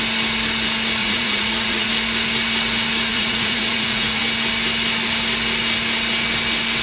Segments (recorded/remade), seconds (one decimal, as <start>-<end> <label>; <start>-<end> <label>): 0.0-1.0 recorded; 1.0-1.9 remade; 1.9-3.1 recorded; 3.1-4.2 remade; 4.2-6.8 recorded